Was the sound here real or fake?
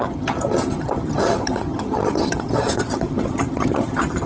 fake